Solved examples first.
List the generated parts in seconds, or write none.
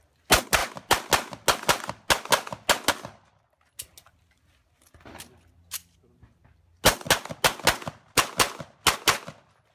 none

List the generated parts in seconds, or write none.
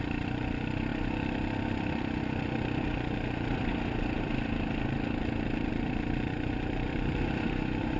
none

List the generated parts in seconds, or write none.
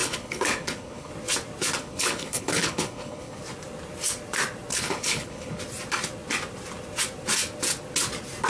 0.0-1.1; 1.8-3.4; 4.7-5.6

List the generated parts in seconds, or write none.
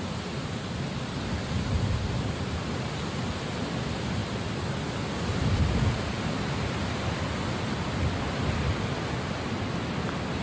none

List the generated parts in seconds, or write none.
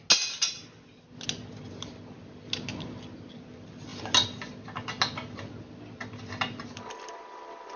none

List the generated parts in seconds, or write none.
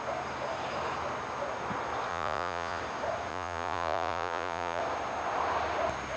2.1-2.8; 3.3-4.8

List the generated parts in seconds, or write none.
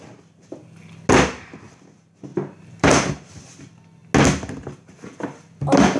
2.3-3.1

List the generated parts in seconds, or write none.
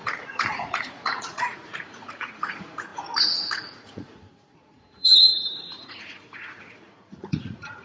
0.0-7.8